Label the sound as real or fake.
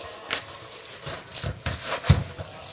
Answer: real